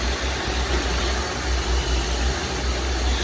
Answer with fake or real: real